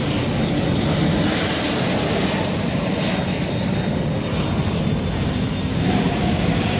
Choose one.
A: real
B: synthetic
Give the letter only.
A